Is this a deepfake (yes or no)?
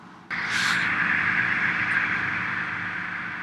no